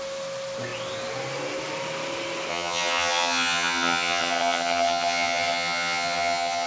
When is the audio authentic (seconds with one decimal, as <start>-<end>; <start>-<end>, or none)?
0.0-2.5